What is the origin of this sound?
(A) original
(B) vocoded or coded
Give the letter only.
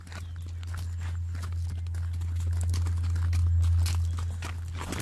A